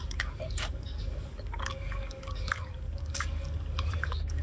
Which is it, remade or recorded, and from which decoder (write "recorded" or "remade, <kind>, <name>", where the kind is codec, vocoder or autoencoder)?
remade, codec, DAC